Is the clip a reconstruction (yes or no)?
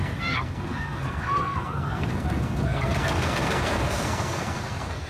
yes